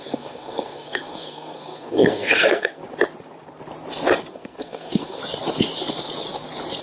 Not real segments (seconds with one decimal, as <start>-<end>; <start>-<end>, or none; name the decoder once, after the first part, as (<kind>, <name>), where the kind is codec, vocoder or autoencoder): 0.0-2.8 (codec, SNAC); 4.3-5.2